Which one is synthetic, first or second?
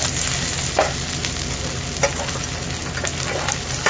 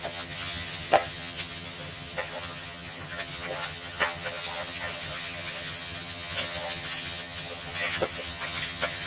second